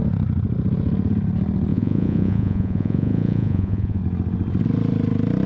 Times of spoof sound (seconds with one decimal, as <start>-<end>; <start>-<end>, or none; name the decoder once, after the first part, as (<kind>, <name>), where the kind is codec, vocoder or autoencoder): 1.7-4.0 (vocoder, Vocos)